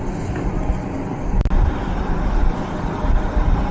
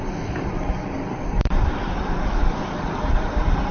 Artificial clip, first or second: second